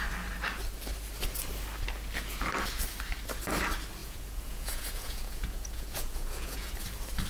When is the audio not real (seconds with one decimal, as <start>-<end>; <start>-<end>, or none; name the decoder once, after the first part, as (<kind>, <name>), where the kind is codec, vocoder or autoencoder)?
4.0-6.7 (vocoder, Vocos)